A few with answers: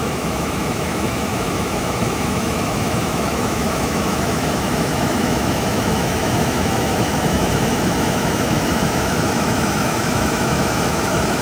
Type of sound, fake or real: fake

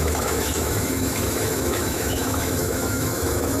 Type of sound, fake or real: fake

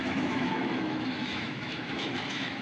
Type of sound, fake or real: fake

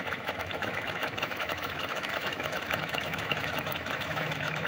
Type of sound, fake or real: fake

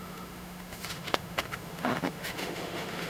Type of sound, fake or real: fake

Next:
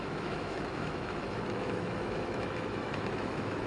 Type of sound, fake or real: fake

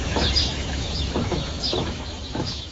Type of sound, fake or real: fake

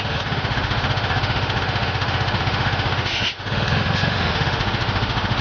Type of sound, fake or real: fake